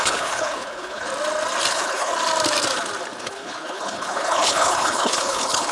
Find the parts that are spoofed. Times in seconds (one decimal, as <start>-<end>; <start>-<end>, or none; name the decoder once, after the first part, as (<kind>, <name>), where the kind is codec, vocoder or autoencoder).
0.0-1.1 (codec, HILCodec); 1.7-2.1; 3.2-5.7